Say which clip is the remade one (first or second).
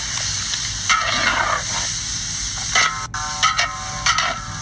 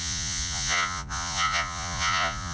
second